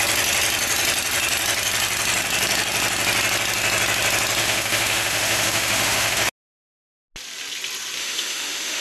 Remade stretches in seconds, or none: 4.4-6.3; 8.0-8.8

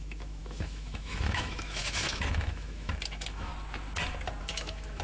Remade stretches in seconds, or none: 0.0-3.5; 4.4-5.0